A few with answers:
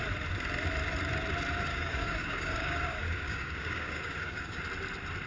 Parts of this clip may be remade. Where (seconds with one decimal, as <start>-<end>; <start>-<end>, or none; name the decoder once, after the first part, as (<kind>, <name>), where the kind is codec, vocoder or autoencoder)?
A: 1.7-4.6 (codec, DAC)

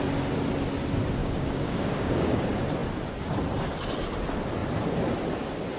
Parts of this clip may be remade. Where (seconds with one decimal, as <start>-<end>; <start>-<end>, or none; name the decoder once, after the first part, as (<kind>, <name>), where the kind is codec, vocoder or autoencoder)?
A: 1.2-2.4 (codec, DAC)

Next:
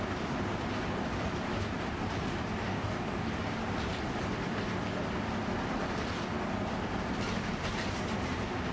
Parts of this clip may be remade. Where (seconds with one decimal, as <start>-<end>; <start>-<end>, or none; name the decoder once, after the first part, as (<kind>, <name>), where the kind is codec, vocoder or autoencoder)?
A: 2.6-3.3 (codec, DAC)